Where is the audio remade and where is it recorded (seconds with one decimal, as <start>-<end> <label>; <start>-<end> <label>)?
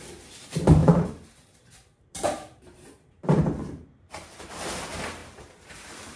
0.0-0.8 recorded; 0.8-4.5 remade; 4.5-5.2 recorded; 5.2-6.2 remade